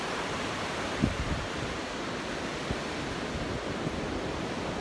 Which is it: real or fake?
real